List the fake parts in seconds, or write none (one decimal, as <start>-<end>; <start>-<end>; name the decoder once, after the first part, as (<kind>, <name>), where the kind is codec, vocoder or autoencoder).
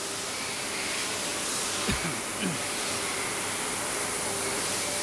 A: none